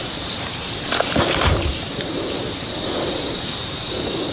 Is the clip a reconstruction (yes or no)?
yes